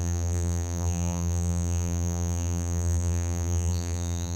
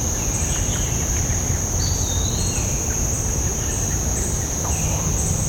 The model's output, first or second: first